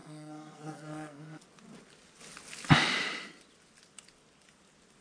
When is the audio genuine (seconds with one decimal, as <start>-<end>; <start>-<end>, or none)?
1.4-5.0